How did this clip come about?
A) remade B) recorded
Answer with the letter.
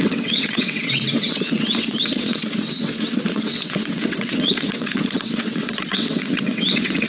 A